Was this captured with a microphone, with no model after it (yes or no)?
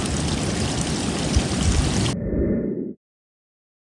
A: yes